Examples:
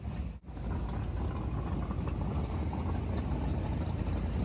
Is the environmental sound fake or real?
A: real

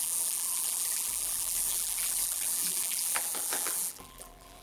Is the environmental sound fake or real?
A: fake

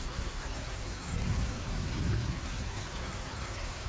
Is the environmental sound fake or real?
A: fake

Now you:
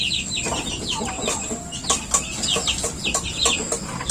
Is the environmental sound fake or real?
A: real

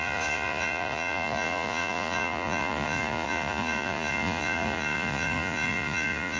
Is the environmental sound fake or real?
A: fake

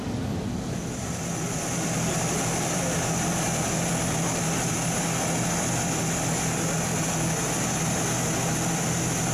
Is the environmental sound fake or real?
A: real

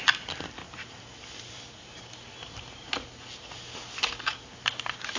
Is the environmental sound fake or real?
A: real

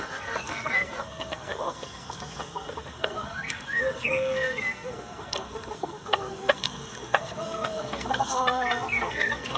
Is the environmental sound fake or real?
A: fake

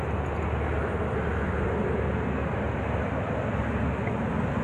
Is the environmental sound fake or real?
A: real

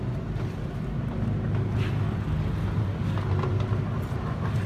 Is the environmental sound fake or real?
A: real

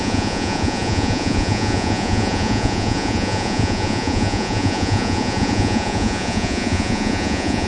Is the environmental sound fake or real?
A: fake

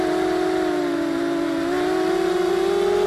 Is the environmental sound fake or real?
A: real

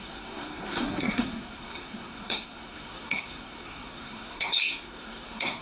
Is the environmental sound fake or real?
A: fake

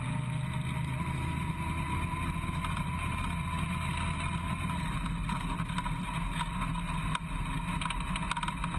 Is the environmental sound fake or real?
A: real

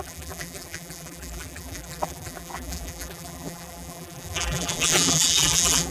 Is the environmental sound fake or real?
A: fake